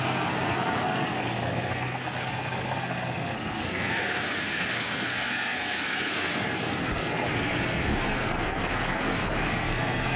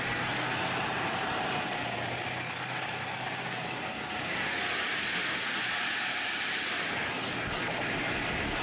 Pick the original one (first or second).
second